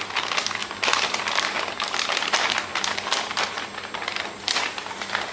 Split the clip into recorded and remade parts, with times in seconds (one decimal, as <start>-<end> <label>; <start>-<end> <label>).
0.0-5.3 recorded